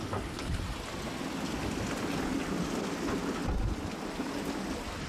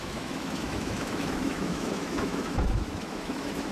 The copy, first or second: second